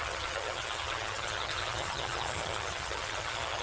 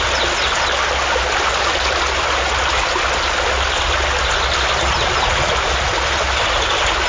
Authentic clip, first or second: second